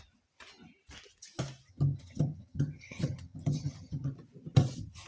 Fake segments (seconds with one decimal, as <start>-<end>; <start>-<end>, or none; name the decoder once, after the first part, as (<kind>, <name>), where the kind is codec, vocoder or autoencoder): 1.7-4.1 (vocoder, HiFi-GAN)